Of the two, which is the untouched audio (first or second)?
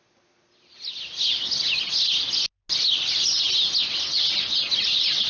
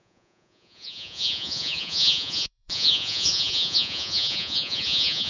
first